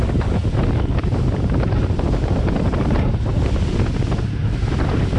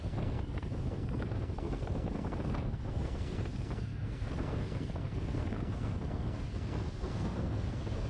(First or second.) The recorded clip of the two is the first